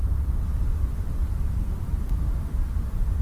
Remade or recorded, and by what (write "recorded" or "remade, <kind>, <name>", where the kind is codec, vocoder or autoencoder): remade, vocoder, BigVGAN v2